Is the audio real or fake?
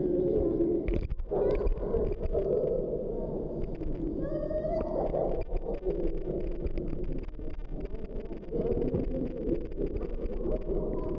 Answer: fake